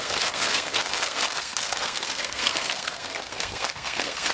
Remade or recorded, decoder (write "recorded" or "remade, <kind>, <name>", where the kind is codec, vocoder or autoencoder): remade, codec, SNAC